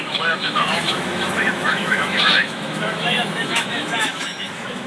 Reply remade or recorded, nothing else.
remade